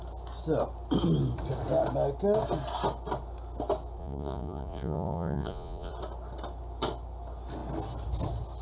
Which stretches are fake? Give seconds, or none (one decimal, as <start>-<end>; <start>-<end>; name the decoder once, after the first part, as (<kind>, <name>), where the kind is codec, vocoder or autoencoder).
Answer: 4.0-5.9 (vocoder, Vocos)